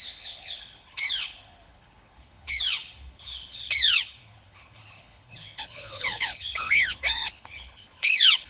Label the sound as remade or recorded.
remade